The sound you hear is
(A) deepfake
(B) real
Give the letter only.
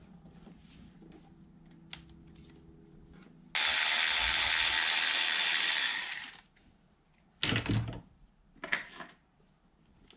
B